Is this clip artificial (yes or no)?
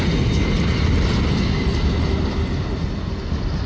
no